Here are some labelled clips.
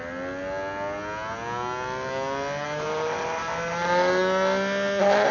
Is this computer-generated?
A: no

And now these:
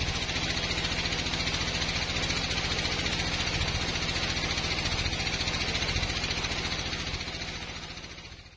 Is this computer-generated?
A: no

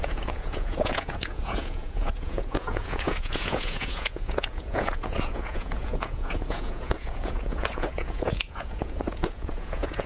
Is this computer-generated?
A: yes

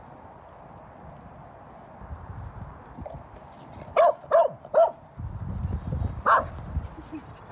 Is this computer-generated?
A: no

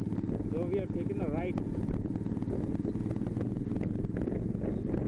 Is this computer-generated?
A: no